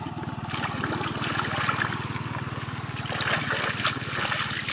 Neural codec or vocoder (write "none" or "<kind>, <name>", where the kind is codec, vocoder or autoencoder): none